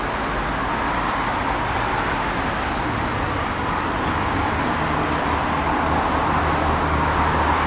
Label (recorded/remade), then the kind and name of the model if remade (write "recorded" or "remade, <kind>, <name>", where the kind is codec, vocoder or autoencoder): recorded